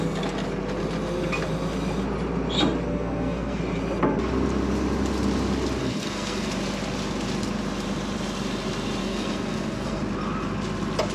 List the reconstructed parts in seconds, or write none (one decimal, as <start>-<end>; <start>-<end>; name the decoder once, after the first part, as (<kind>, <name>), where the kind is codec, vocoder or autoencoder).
2.9-3.6 (codec, SNAC); 5.8-6.5; 9.0-10.0